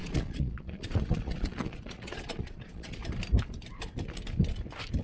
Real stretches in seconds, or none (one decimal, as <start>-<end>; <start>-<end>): 3.0-5.0